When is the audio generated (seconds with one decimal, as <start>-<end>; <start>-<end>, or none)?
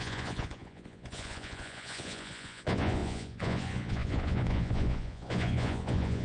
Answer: 0.0-6.2